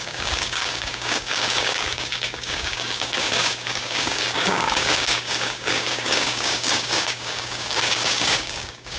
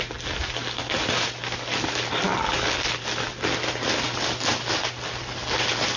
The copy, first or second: first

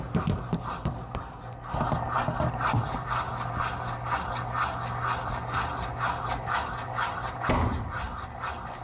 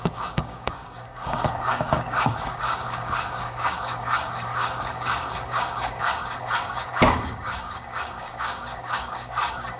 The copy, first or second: second